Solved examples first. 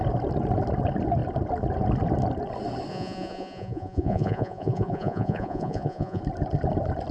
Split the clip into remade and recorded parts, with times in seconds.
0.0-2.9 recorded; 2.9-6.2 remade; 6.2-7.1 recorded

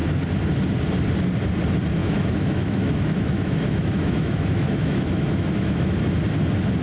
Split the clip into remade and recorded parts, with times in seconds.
0.0-2.0 recorded; 2.0-6.0 remade; 6.0-6.8 recorded

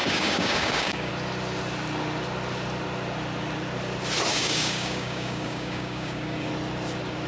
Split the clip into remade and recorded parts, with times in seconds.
0.0-1.1 remade; 1.1-4.3 recorded; 4.3-6.5 remade; 6.5-7.3 recorded

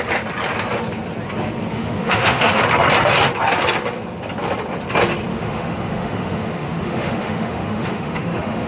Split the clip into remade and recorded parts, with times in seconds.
0.0-1.7 recorded; 1.7-2.6 remade; 2.6-5.3 recorded; 5.3-8.7 remade

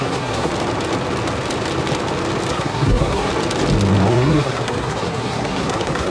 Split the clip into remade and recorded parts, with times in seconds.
0.0-0.5 remade; 0.5-2.5 recorded; 2.5-3.3 remade; 3.3-4.1 recorded; 4.1-6.1 remade

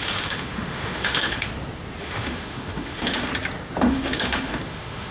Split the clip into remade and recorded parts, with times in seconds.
0.0-1.5 remade; 1.5-2.0 recorded; 2.0-3.3 remade; 3.3-3.8 recorded; 3.8-5.1 remade